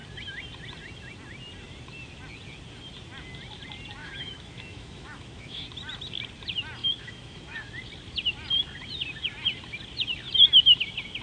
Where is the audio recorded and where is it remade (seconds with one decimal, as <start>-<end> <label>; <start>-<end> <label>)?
0.0-4.0 recorded; 4.0-5.6 remade; 5.6-6.8 recorded; 6.8-7.7 remade; 7.7-11.2 recorded